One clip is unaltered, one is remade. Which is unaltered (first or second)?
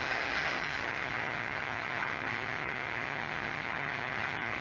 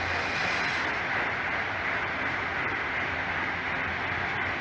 second